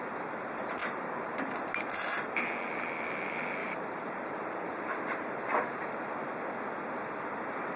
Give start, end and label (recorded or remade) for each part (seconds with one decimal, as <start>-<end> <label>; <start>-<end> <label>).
0.0-0.8 recorded; 0.8-1.4 remade; 1.4-3.6 recorded; 3.6-5.9 remade; 5.9-7.8 recorded